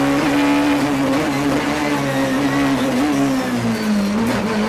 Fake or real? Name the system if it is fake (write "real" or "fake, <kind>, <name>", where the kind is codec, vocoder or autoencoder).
real